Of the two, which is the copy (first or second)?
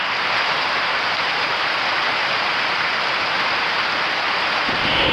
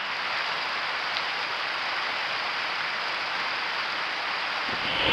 first